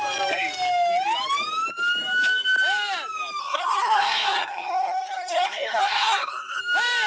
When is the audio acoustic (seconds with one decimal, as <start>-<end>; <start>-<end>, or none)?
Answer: 0.0-3.4; 6.6-7.1